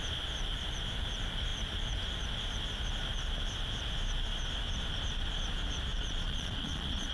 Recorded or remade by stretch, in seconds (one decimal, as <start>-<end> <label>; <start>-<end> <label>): 0.0-5.9 recorded; 5.9-7.1 remade